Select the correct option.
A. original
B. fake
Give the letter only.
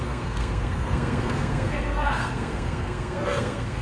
B